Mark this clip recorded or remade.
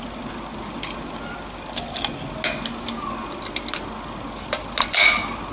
recorded